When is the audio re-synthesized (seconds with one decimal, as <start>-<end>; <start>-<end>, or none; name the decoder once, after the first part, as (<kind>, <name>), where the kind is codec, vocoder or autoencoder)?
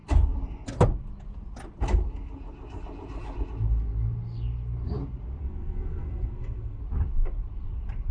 5.4-6.8 (codec, SNAC)